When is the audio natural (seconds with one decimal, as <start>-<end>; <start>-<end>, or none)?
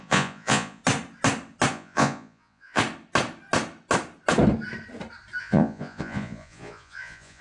0.8-1.7; 2.8-5.4